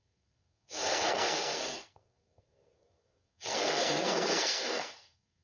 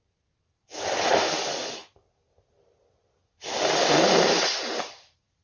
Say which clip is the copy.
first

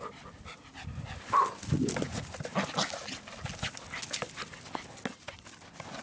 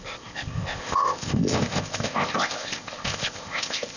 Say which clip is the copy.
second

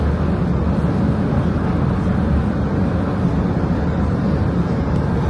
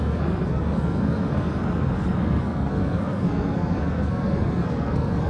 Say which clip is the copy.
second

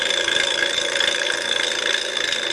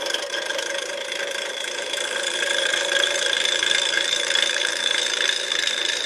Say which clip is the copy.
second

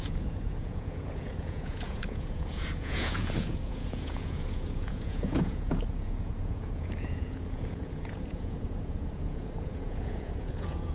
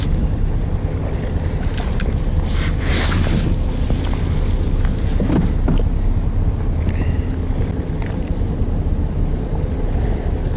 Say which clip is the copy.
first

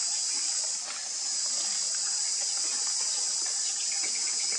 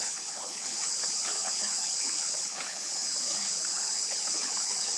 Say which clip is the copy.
second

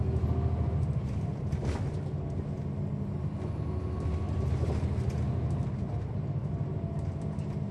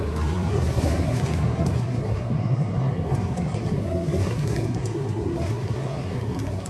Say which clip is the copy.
second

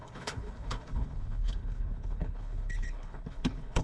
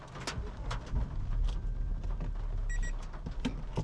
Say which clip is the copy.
first